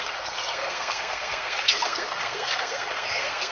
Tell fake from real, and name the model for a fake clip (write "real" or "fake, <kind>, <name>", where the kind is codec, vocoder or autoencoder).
fake, codec, SNAC